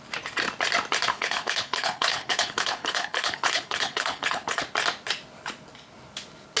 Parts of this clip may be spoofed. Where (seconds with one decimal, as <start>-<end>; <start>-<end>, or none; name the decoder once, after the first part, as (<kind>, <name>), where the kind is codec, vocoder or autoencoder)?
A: 1.1-4.6 (codec, HILCodec)